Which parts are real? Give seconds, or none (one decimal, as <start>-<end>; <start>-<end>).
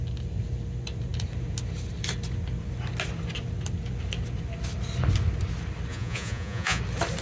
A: 0.0-5.9; 6.8-7.2